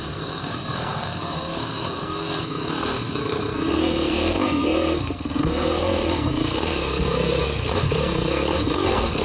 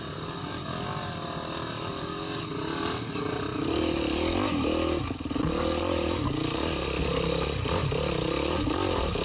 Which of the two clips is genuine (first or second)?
second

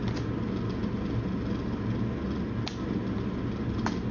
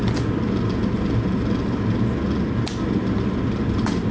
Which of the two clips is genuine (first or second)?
first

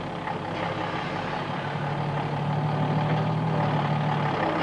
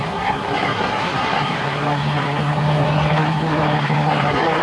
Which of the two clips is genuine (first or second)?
first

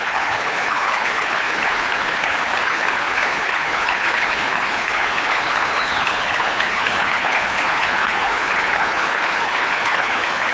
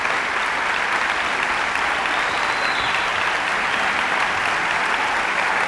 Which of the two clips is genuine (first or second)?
second